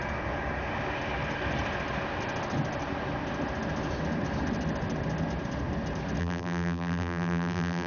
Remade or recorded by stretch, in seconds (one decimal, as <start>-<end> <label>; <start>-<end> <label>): 0.0-6.2 recorded; 6.2-7.9 remade